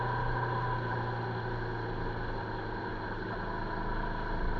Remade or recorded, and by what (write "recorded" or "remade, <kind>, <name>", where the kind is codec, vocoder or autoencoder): recorded